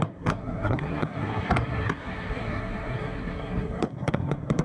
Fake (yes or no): yes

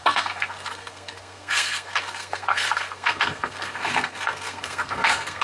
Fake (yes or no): yes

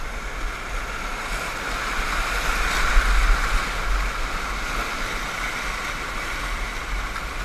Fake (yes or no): no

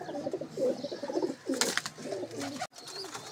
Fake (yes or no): no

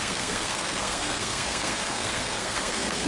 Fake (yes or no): yes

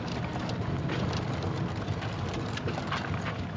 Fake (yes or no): no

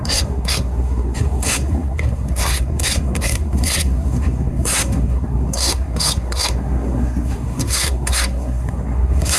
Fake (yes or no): yes